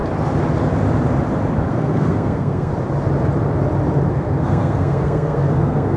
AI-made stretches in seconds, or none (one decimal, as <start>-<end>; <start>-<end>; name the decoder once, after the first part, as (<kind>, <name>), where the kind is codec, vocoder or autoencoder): 1.7-2.7 (codec, SNAC); 4.1-6.0